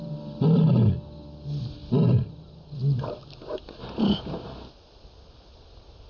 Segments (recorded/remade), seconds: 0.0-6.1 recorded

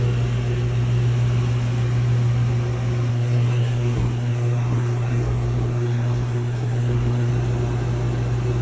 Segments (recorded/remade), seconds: 0.0-3.1 recorded; 3.1-7.3 remade; 7.3-8.6 recorded